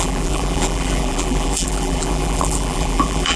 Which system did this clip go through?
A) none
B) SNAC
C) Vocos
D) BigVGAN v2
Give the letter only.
D